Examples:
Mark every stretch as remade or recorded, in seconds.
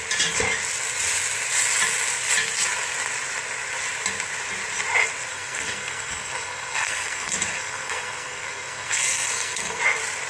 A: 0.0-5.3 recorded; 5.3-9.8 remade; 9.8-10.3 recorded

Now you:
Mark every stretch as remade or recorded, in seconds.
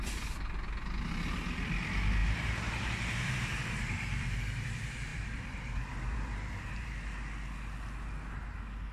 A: 0.0-2.2 recorded; 2.2-4.4 remade; 4.4-5.1 recorded; 5.1-6.9 remade; 6.9-8.9 recorded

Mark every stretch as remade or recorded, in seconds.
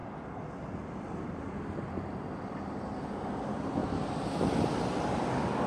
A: 0.0-5.7 recorded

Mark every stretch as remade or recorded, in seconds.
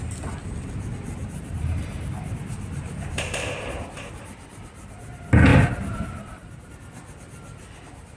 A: 0.0-1.2 recorded; 1.2-3.6 remade; 3.6-5.5 recorded; 5.5-6.7 remade; 6.7-8.2 recorded